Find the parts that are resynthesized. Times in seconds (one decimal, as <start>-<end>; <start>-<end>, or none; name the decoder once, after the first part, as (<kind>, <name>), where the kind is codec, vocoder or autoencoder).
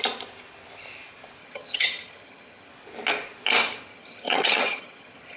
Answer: 1.4-2.7 (vocoder, HiFi-GAN); 3.9-5.4